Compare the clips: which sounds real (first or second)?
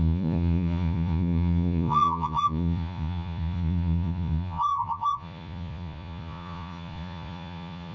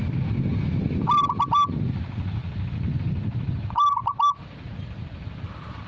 second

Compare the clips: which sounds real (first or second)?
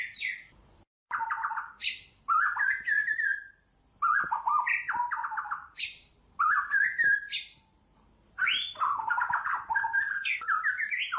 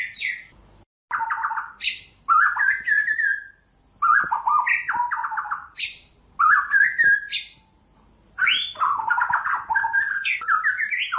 second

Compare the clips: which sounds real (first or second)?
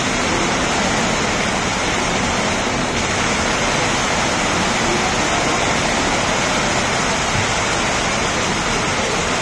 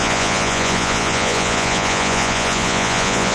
first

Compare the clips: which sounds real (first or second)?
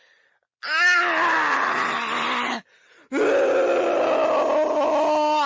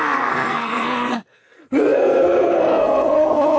first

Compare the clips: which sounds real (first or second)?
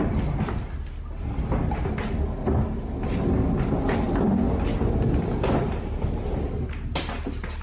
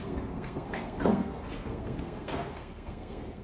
first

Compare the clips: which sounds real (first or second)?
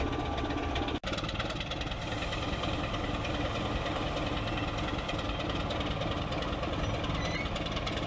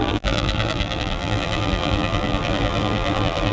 first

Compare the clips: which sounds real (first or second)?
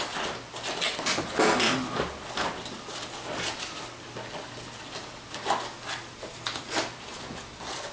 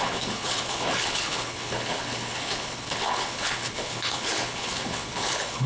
first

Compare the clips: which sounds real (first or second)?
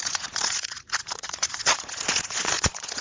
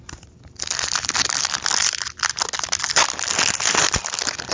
second